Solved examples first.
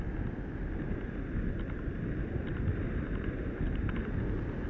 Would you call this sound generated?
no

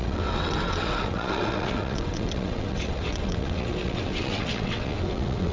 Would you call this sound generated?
yes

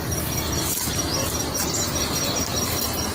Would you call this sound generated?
no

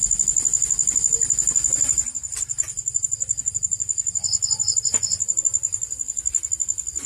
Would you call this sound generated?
no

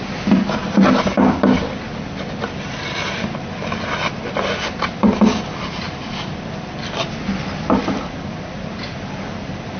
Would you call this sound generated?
no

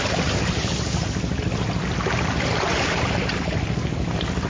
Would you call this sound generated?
no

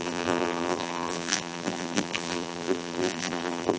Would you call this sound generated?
yes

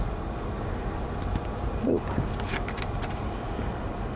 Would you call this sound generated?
no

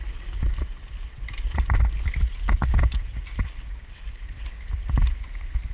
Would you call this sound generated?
no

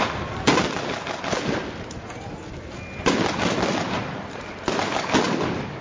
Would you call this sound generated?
no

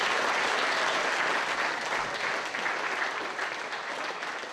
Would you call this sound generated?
no